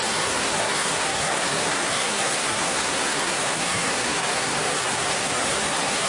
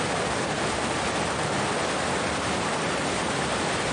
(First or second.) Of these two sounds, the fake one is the first